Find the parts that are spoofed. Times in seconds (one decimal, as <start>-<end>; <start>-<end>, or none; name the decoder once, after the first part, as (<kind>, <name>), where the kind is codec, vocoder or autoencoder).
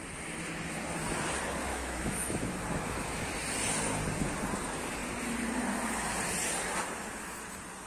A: 1.7-3.3 (autoencoder, DAC-VAE)